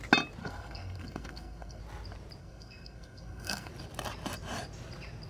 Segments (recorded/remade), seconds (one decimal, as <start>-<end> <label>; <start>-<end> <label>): 0.0-0.4 recorded; 0.4-1.8 remade; 1.8-2.4 recorded; 2.4-3.7 remade; 3.7-5.3 recorded